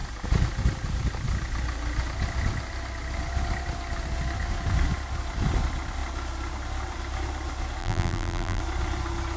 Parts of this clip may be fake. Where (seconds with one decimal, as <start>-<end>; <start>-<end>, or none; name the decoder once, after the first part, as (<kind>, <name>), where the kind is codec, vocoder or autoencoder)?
7.8-8.6 (vocoder, BigVGAN v2)